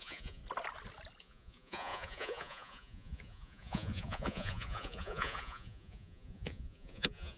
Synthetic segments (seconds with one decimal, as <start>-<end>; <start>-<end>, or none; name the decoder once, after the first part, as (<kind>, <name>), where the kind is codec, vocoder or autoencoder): 0.0-0.4 (vocoder, Vocos); 1.2-7.4